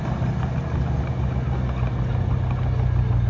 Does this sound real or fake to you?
real